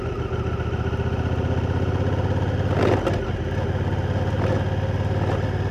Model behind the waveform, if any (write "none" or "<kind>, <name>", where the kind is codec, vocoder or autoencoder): none